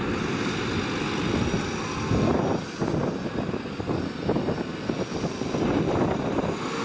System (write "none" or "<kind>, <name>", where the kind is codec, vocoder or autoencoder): none